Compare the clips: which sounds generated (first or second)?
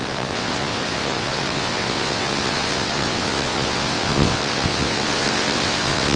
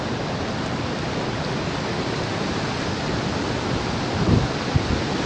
first